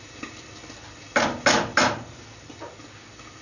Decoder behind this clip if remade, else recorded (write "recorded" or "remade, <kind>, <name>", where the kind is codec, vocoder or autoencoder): recorded